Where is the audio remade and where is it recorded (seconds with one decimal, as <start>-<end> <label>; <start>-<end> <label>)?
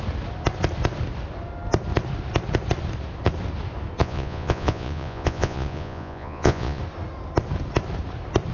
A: 0.0-4.0 recorded; 4.0-6.8 remade; 6.8-8.5 recorded